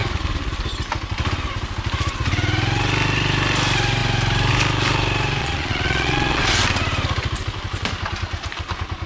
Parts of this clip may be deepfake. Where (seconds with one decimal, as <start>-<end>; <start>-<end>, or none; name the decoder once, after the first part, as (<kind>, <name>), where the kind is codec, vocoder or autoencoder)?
5.4-6.4 (vocoder, Vocos)